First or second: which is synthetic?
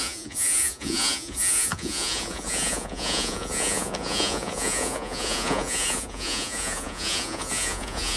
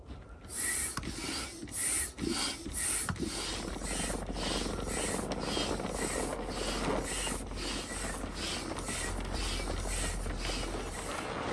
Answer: first